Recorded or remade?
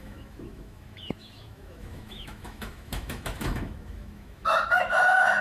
remade